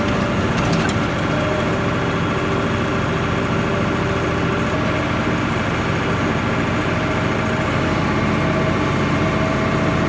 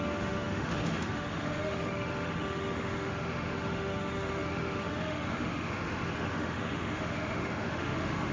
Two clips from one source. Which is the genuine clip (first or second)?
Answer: first